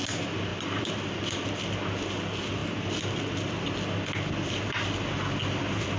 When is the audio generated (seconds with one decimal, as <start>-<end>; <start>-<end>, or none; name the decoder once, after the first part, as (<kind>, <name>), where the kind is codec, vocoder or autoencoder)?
0.5-1.6 (vocoder, BigVGAN v2)